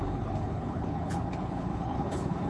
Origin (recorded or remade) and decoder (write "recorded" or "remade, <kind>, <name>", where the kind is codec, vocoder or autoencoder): remade, codec, HILCodec